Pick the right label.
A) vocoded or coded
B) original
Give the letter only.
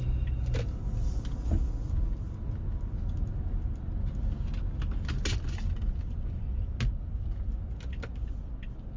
B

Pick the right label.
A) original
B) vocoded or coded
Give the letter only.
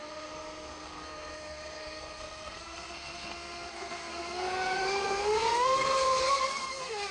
B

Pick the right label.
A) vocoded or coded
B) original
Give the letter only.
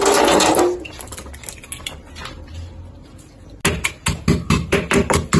B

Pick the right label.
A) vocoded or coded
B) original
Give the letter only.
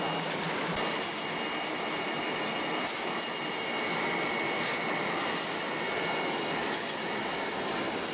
B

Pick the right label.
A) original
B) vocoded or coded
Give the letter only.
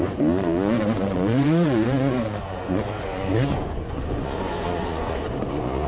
B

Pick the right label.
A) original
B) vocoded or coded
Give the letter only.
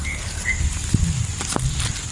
A